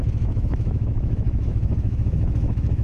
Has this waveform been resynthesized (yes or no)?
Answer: yes